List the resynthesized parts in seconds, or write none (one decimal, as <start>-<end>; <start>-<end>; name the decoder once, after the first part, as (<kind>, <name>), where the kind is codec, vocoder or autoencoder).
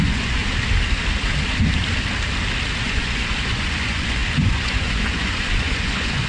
0.0-0.4 (vocoder, Vocos); 2.8-6.3